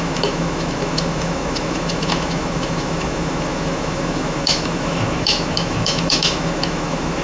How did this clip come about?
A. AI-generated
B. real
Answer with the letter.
A